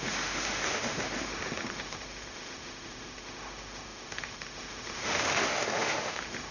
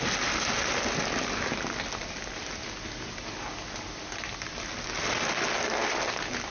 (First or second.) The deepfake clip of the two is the first